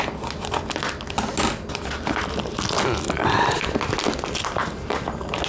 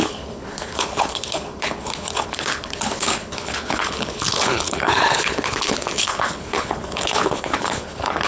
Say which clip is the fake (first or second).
second